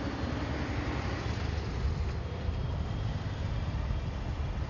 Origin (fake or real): real